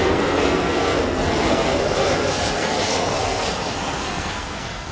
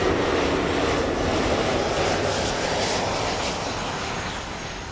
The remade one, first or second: first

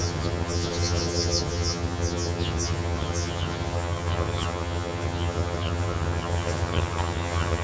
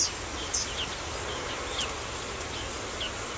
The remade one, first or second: first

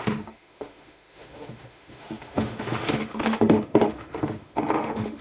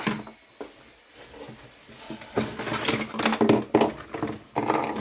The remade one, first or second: first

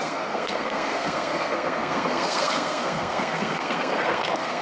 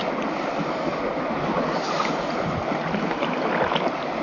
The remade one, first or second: first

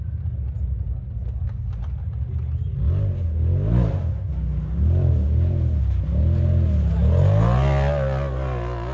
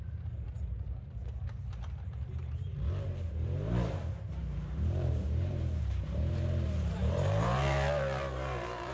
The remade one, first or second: second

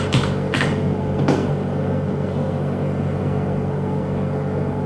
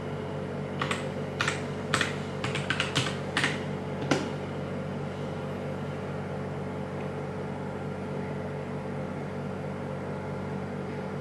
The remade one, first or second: first